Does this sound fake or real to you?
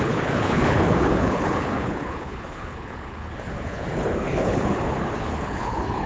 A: fake